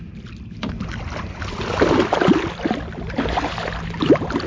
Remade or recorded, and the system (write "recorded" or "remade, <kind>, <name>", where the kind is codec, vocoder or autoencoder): recorded